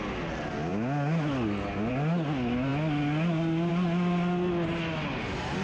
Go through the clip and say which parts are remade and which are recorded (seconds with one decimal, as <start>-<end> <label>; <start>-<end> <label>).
0.0-5.6 recorded